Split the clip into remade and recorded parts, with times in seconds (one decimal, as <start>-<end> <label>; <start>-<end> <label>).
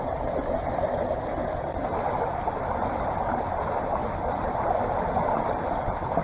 0.0-4.0 recorded; 4.0-4.6 remade; 4.6-6.2 recorded